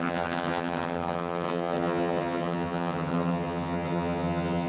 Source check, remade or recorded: remade